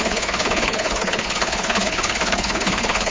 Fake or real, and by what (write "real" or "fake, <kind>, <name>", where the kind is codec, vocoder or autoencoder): fake, codec, HILCodec